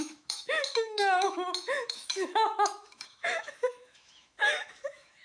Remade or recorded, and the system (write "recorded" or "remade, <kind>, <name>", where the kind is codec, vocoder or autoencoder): remade, autoencoder, DAC-VAE